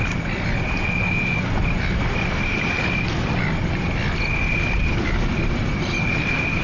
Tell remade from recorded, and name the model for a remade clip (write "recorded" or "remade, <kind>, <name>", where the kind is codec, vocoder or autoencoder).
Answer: recorded